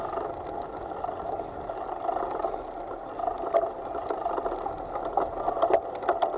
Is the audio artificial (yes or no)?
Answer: no